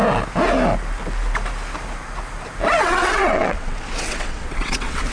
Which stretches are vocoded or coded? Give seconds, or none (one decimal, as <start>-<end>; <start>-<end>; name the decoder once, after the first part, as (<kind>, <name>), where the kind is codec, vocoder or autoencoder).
2.8-5.1 (vocoder, WaveNeXt)